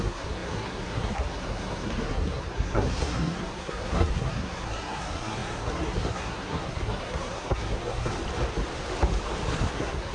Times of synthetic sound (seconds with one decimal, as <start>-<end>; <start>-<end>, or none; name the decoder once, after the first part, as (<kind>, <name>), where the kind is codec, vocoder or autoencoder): 0.0-8.1 (codec, SNAC); 9.7-10.1